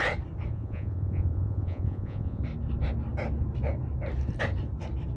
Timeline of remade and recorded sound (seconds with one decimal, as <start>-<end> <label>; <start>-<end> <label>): 0.0-0.5 recorded; 0.5-2.4 remade; 2.4-5.2 recorded